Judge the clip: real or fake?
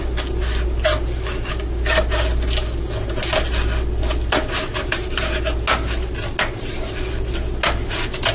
real